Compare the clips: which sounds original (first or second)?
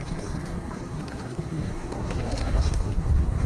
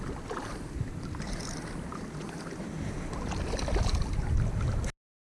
second